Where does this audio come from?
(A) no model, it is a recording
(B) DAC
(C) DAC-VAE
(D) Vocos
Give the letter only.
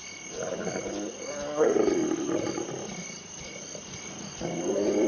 A